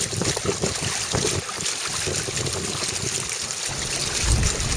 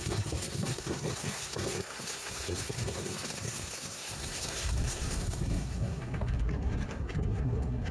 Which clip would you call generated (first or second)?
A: second